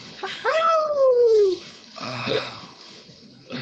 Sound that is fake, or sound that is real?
fake